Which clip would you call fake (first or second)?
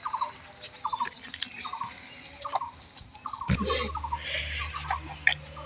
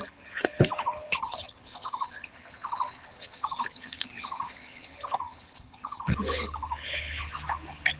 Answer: second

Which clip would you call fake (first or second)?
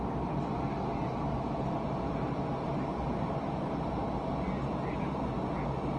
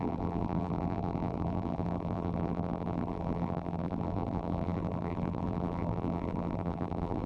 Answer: second